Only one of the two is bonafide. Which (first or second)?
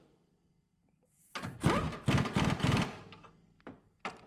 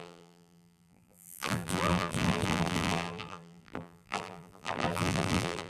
first